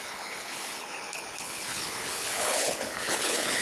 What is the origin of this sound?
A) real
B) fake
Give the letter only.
B